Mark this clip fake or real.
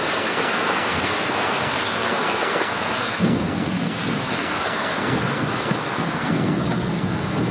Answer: fake